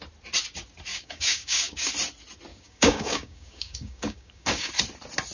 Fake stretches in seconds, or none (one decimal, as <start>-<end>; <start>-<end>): 0.9-1.9; 2.5-4.7